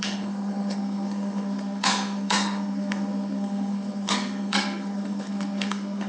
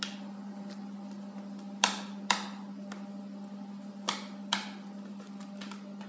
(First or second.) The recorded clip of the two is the second